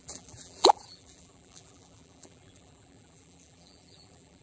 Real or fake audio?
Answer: fake